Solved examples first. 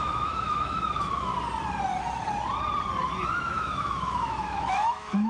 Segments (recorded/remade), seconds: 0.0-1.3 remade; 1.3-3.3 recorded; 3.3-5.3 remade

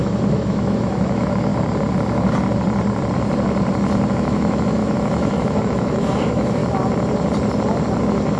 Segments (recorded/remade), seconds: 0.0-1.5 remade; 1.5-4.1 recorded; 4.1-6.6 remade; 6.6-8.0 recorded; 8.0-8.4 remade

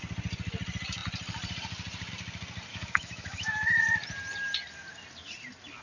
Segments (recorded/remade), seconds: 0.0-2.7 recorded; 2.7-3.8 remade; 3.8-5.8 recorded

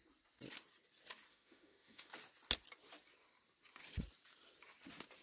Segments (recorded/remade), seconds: 0.0-1.3 recorded; 1.3-2.1 remade; 2.1-5.2 recorded

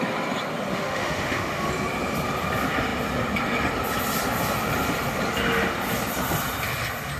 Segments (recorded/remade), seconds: 0.0-0.7 recorded; 0.7-1.7 remade; 1.7-7.2 recorded

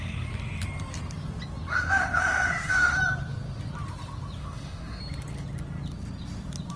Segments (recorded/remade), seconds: 0.0-1.7 recorded; 1.7-3.0 remade; 3.0-4.4 recorded; 4.4-5.0 remade; 5.0-6.8 recorded

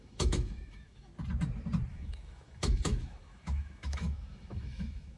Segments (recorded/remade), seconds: 0.0-1.1 remade; 1.1-1.9 recorded; 1.9-5.2 remade

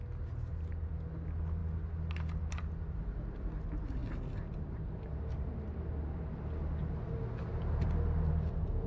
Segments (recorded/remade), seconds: 0.0-8.9 recorded